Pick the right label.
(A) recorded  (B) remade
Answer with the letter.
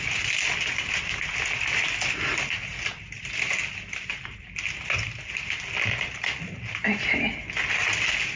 A